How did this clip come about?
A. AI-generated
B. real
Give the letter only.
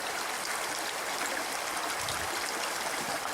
B